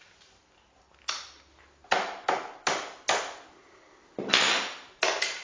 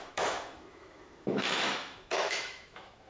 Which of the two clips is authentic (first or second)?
first